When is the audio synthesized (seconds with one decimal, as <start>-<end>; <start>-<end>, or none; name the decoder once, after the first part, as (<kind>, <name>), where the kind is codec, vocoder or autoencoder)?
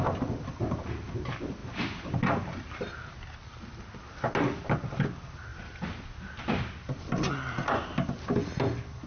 none